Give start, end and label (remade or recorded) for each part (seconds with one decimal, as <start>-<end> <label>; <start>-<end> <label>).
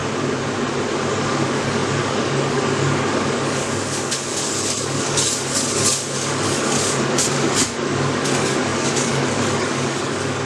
0.0-1.1 recorded; 1.1-10.5 remade